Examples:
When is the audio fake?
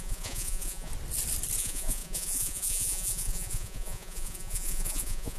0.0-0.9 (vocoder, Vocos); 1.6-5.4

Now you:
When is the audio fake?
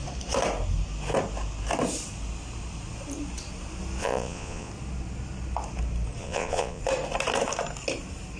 4.0-4.7 (vocoder, Vocos); 6.2-6.8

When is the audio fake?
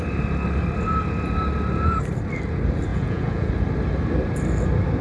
2.9-3.5 (vocoder, Vocos)